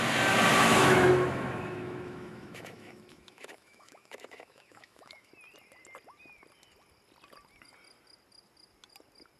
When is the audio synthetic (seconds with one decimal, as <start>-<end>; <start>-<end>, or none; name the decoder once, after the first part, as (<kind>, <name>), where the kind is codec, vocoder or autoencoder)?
0.7-5.3 (autoencoder, DAC-VAE)